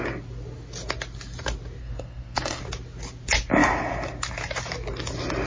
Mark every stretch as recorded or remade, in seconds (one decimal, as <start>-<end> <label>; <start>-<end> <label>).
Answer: 0.0-1.8 recorded; 1.8-2.6 remade; 2.6-5.5 recorded